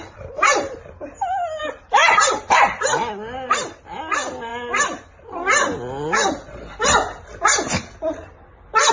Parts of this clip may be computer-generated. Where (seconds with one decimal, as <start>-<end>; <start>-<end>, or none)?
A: none